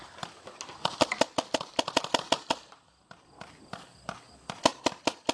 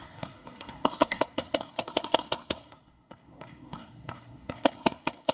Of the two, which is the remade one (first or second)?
second